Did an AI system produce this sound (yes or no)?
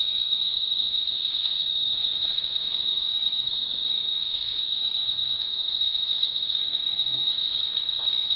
yes